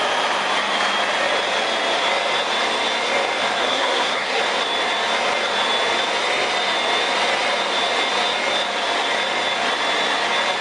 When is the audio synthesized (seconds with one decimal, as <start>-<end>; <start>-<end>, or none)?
3.6-4.4